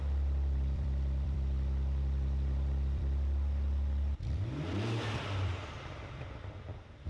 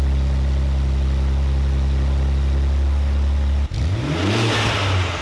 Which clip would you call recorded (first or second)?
second